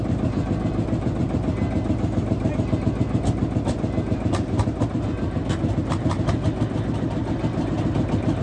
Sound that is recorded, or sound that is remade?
recorded